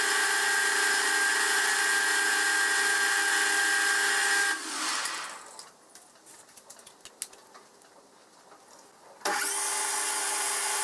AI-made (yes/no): no